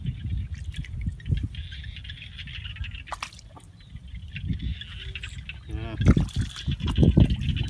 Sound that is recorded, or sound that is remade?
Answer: recorded